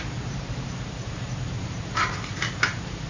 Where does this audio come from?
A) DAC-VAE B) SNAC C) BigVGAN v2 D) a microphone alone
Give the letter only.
C